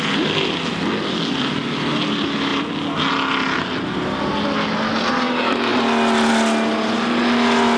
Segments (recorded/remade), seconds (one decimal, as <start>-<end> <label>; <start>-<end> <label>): 0.0-7.8 recorded